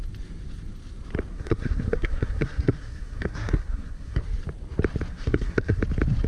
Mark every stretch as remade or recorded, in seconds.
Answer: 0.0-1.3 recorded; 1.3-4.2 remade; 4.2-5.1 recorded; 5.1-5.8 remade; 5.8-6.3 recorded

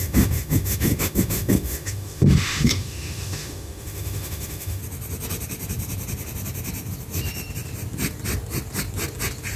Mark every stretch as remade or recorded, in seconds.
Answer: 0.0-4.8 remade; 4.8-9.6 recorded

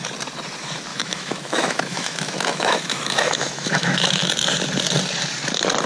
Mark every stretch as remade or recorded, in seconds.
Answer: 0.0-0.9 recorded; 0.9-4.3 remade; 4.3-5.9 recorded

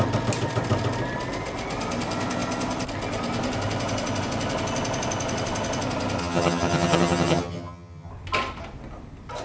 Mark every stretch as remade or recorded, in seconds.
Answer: 0.0-6.2 recorded; 6.2-8.1 remade; 8.1-9.4 recorded

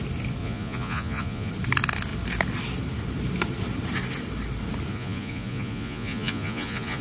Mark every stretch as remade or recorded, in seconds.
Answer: 0.0-0.4 recorded; 0.4-1.5 remade; 1.5-4.9 recorded; 4.9-7.0 remade

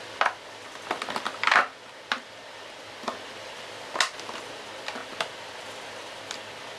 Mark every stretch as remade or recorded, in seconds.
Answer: 0.0-6.8 recorded

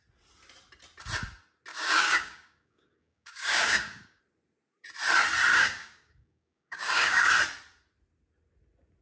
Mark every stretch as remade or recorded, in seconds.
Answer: 0.0-1.7 recorded; 1.7-4.2 remade; 4.2-5.5 recorded; 5.5-7.3 remade; 7.3-9.0 recorded

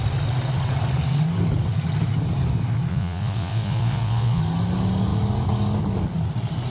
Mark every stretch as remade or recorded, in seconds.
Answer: 0.0-2.9 recorded; 2.9-4.4 remade; 4.4-6.7 recorded